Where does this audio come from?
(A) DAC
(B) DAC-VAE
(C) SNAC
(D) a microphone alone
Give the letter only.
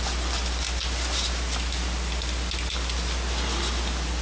D